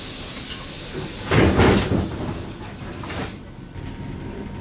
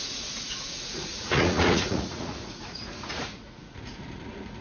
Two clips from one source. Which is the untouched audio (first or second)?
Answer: first